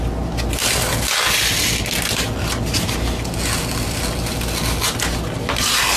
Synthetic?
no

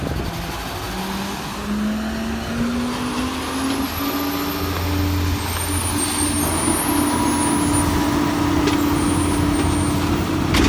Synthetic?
no